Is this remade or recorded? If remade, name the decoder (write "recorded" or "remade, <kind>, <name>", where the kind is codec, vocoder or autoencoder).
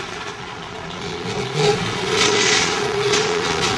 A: remade, vocoder, Vocos